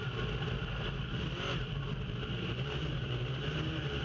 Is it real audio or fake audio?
real